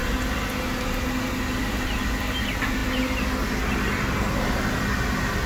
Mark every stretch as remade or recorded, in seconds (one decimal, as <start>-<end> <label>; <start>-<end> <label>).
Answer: 0.0-5.5 recorded